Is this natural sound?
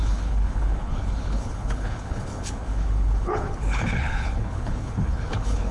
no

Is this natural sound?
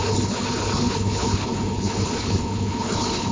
no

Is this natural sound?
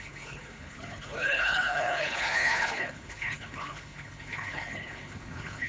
no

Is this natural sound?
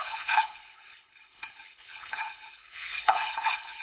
no